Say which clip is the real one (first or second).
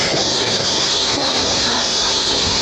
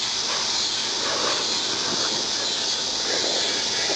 second